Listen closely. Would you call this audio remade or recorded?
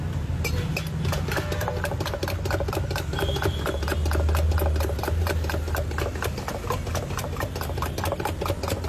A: recorded